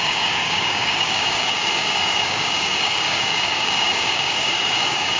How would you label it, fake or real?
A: fake